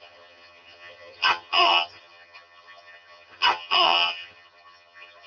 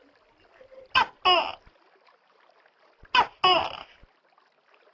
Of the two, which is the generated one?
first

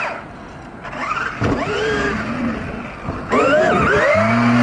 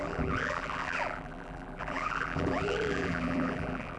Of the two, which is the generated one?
second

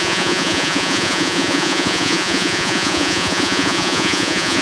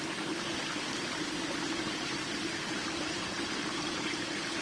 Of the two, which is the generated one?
first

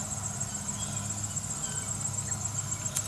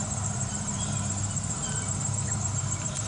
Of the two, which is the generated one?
second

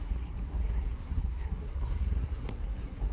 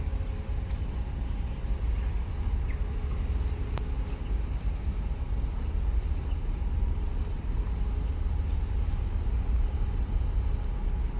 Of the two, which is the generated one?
first